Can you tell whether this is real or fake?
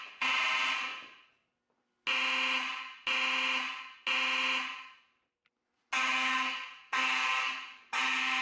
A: real